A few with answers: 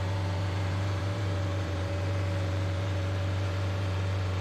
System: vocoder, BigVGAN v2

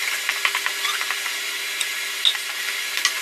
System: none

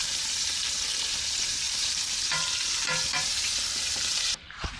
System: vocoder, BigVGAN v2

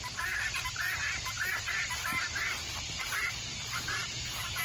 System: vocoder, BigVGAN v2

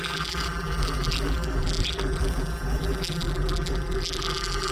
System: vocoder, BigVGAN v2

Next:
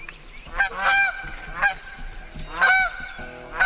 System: none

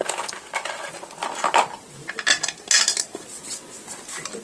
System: none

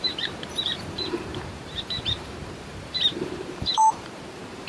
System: vocoder, BigVGAN v2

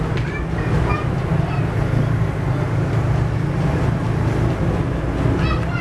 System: none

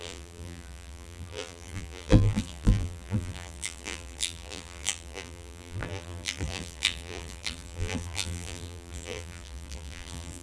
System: vocoder, BigVGAN v2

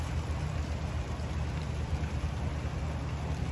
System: none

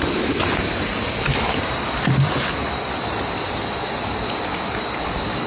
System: none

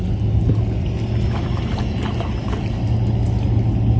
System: none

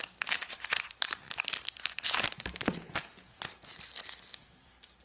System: none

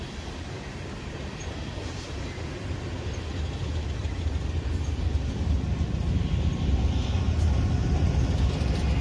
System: vocoder, BigVGAN v2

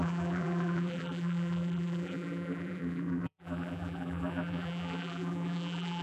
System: vocoder, BigVGAN v2